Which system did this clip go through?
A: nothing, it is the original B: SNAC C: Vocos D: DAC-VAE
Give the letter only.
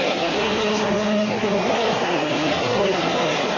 B